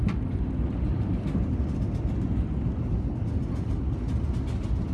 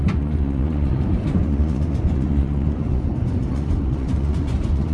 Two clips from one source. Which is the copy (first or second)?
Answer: second